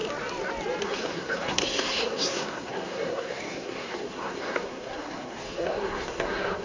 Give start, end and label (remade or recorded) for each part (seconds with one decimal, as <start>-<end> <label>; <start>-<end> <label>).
0.0-0.8 recorded; 0.8-6.6 remade

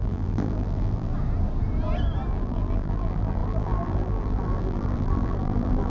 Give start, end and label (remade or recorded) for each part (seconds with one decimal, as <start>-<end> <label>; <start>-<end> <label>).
0.0-1.1 remade; 1.1-2.3 recorded; 2.3-5.9 remade

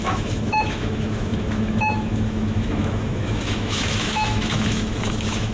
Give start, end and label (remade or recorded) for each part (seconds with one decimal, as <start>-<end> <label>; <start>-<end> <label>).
0.0-5.5 remade

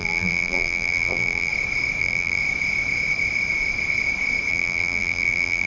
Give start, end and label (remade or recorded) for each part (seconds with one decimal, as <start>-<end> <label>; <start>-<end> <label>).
0.0-1.5 remade; 1.5-2.0 recorded; 2.0-2.4 remade; 2.4-4.5 recorded; 4.5-5.7 remade

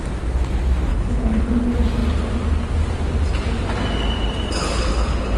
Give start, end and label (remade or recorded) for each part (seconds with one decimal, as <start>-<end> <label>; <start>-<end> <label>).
0.0-0.9 recorded; 0.9-1.5 remade; 1.5-4.6 recorded; 4.6-5.4 remade

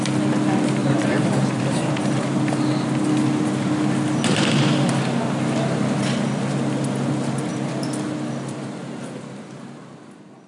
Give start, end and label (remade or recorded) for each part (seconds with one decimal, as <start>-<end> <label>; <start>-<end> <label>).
0.0-0.8 recorded; 0.8-1.9 remade; 1.9-10.5 recorded

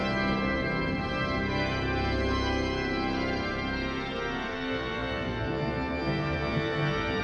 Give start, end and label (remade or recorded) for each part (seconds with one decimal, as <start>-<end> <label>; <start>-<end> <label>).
0.0-4.5 recorded; 4.5-7.2 remade